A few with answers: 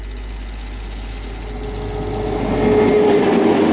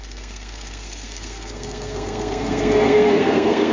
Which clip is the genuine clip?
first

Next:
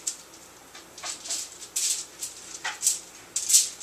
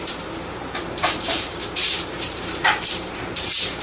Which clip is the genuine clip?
first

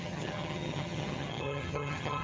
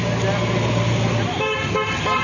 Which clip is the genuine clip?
second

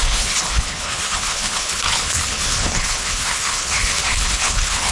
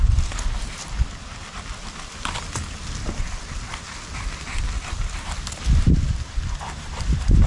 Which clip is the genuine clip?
second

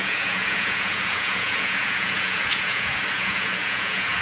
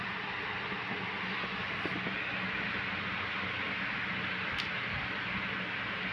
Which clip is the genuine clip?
second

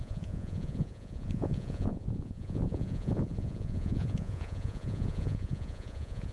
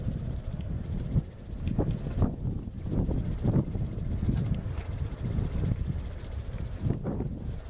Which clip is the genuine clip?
second